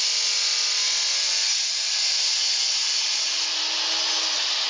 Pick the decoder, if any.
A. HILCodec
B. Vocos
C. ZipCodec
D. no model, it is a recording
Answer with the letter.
D